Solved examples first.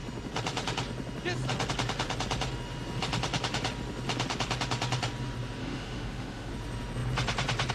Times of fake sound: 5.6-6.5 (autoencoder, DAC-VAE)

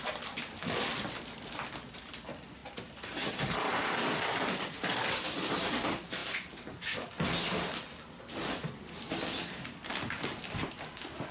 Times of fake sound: none

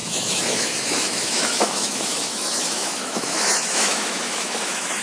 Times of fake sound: 0.0-5.0 (autoencoder, DAC-VAE)

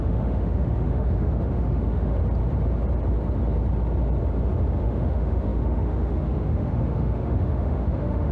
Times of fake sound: 0.0-2.2 (autoencoder, DAC-VAE); 4.8-8.3